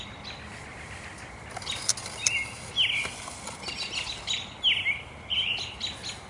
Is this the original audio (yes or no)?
yes